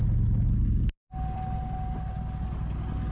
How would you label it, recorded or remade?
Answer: recorded